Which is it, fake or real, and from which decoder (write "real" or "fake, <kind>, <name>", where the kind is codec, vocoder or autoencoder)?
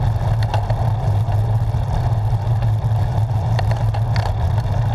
real